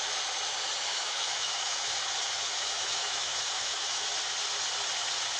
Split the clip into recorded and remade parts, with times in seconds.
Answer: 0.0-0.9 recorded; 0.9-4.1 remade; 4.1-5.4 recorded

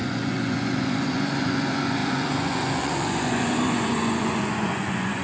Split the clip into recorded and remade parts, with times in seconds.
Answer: 0.0-5.2 remade

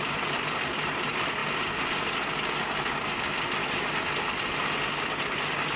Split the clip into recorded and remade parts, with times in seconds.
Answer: 0.0-5.8 recorded

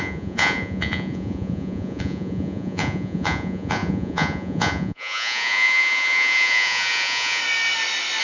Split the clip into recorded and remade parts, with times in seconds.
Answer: 0.0-7.4 remade; 7.4-8.2 recorded